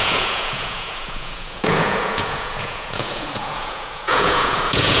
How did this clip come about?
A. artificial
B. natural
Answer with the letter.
A